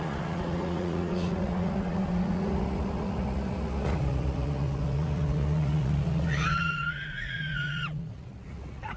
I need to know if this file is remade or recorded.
remade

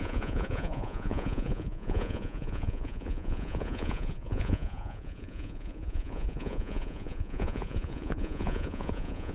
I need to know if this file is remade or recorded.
remade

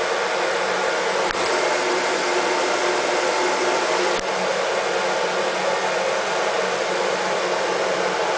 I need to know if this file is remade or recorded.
recorded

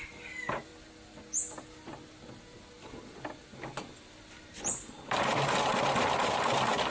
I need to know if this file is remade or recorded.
recorded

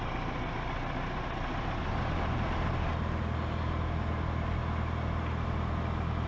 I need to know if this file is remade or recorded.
recorded